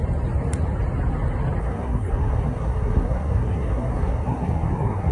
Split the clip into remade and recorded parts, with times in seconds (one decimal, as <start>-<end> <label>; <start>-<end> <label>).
0.0-1.6 recorded; 1.6-5.1 remade